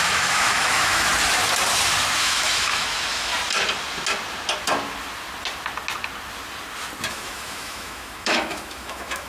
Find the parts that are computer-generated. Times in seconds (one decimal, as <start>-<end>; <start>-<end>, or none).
0.0-1.1; 2.2-3.3; 7.1-9.3